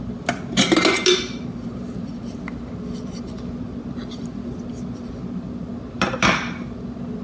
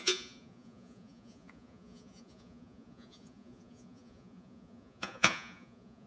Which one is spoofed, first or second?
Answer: second